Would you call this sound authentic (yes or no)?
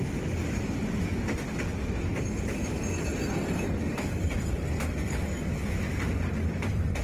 yes